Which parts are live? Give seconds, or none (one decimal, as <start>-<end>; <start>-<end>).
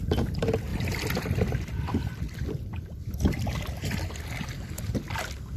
0.0-0.7; 4.1-5.6